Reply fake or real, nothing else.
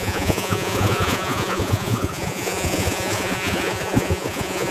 fake